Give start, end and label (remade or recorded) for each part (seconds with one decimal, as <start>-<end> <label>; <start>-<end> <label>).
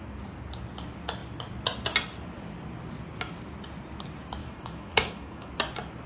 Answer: 0.0-4.4 recorded; 4.4-5.5 remade; 5.5-6.1 recorded